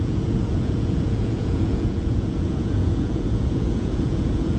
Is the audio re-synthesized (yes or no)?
yes